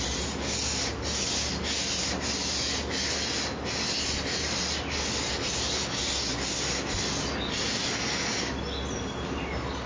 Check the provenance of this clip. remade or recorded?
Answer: recorded